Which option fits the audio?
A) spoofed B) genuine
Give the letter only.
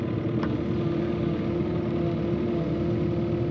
B